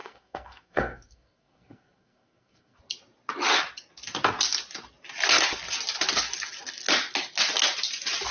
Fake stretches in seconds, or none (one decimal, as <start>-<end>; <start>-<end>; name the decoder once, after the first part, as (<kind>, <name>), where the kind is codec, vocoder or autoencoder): 0.0-2.8 (codec, SNAC)